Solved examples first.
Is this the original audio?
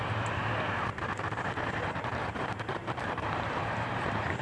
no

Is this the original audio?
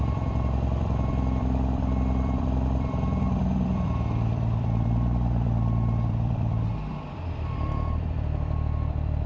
no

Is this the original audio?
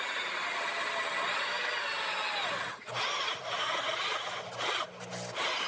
yes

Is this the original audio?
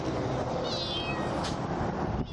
no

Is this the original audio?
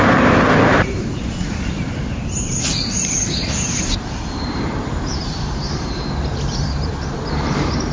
no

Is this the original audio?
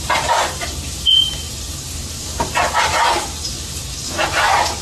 no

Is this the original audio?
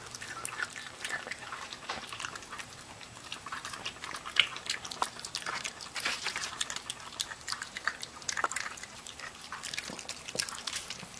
no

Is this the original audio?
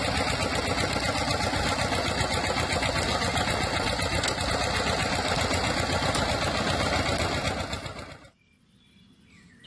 yes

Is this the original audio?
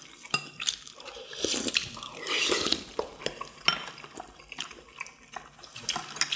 yes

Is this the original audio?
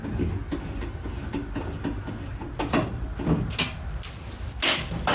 yes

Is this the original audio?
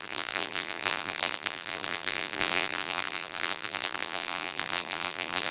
no